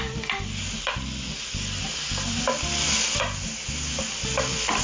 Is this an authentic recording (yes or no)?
yes